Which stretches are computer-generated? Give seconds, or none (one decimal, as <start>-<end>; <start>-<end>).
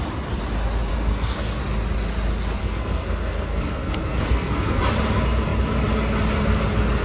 0.9-1.6; 2.6-4.8